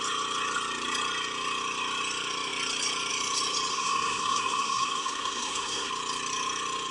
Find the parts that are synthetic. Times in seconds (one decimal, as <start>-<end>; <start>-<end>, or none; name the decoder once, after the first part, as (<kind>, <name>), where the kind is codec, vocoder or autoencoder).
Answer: 3.7-5.9 (codec, SNAC)